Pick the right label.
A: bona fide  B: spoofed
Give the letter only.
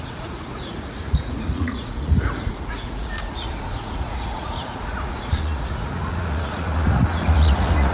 B